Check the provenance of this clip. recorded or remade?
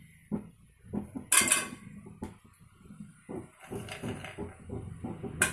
recorded